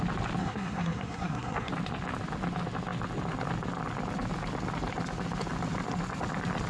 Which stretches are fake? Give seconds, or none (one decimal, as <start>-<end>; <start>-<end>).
0.4-1.7